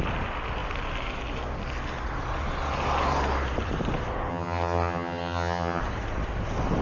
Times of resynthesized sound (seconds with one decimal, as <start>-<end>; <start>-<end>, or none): 4.3-5.8